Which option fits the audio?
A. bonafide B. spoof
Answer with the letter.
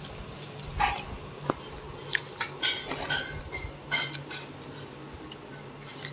A